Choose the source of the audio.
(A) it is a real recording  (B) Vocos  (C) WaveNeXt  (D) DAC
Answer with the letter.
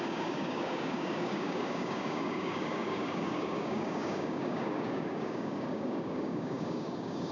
D